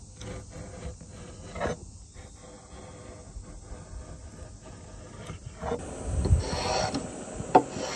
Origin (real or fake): real